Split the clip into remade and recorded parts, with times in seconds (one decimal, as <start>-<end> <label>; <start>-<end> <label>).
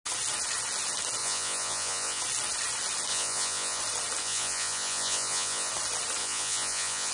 0.0-1.2 recorded; 1.2-2.2 remade; 2.2-3.1 recorded; 3.1-3.8 remade; 3.8-4.2 recorded; 4.2-5.7 remade; 5.7-6.2 recorded; 6.2-7.1 remade